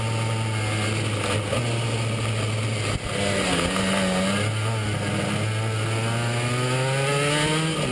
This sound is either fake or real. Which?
real